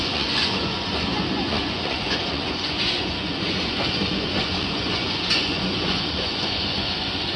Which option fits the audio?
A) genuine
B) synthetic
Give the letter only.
B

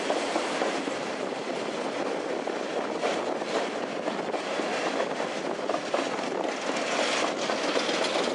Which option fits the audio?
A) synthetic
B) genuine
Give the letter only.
B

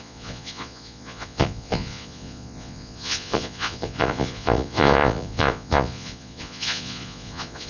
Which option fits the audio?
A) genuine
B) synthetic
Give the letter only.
B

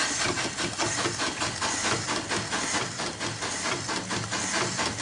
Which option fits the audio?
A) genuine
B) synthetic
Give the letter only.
A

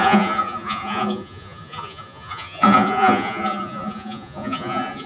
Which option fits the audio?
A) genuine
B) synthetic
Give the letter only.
B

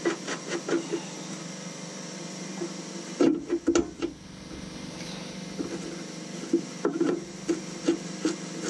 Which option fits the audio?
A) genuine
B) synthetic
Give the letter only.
A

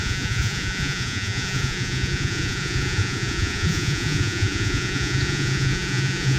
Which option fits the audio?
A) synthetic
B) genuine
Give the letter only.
A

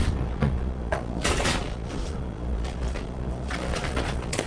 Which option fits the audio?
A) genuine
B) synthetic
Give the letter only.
B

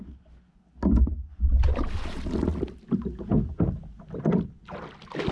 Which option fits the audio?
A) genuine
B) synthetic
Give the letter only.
A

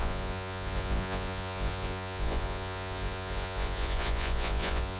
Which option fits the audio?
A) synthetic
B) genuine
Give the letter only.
A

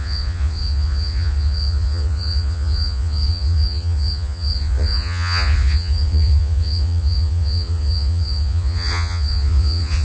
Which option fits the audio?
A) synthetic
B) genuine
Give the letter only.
A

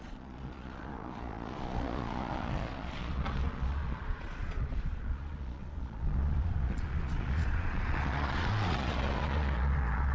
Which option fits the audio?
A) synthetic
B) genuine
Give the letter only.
A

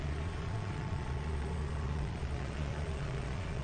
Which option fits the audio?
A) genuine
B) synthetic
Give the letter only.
B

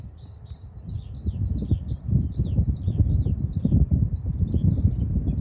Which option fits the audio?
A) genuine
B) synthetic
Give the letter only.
A